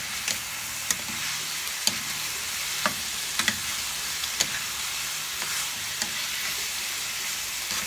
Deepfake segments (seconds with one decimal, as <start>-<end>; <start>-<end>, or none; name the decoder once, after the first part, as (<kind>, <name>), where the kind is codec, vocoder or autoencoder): none